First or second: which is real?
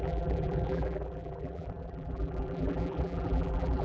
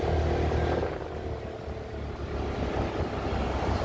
second